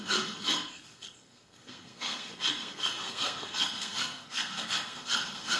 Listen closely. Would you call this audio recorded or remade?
remade